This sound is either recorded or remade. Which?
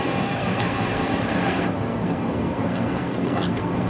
remade